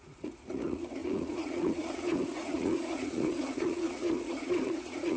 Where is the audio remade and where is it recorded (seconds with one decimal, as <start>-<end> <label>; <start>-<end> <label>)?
0.0-5.2 remade